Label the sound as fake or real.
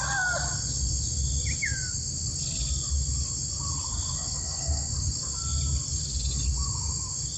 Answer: real